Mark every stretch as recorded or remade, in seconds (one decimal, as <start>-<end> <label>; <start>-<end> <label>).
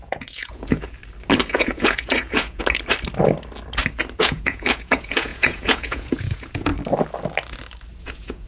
0.0-1.0 remade; 1.0-1.5 recorded; 1.5-2.6 remade; 2.6-4.2 recorded; 4.2-6.7 remade; 6.7-8.0 recorded; 8.0-8.5 remade